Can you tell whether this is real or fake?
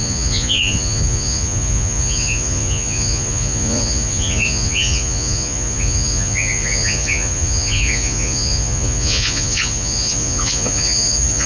fake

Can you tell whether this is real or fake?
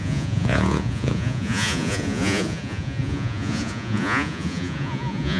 fake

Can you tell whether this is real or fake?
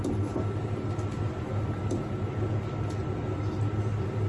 real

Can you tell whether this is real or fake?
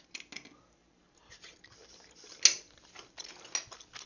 real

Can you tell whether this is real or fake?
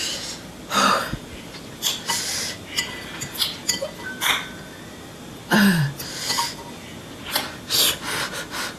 real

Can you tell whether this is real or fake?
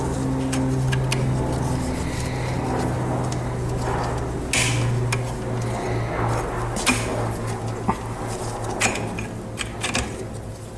real